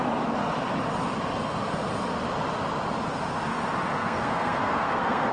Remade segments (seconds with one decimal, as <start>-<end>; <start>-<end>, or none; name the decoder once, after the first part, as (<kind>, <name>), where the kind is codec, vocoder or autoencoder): 4.0-5.3 (codec, SNAC)